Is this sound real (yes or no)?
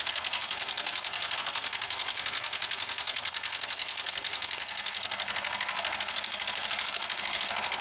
no